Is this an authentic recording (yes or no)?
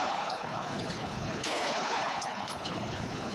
no